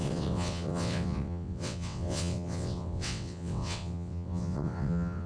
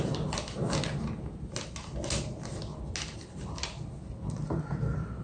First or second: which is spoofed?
first